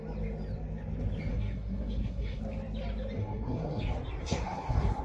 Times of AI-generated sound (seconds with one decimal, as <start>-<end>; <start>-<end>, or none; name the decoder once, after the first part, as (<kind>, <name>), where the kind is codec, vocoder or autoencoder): 1.3-2.4 (codec, SNAC); 3.2-3.8; 4.2-5.0